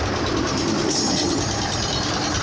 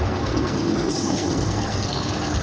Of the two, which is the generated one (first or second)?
second